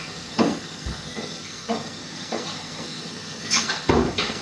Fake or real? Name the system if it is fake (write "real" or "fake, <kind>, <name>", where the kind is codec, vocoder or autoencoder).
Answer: fake, codec, SNAC